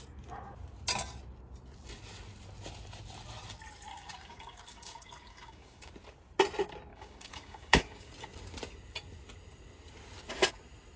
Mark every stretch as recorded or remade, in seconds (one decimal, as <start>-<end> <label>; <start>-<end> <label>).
0.0-3.9 recorded; 3.9-5.9 remade; 5.9-6.9 recorded; 6.9-8.1 remade; 8.1-11.0 recorded